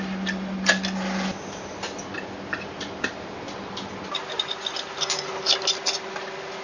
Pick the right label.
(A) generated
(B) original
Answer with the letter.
B